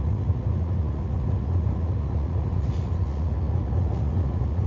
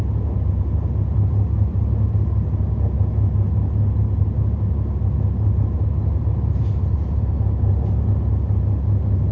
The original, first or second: second